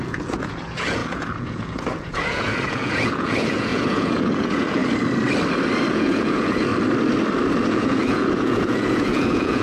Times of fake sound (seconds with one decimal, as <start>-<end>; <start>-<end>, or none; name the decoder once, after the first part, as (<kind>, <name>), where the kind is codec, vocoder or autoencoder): 0.0-4.8 (vocoder, Vocos); 5.9-6.7; 7.7-9.6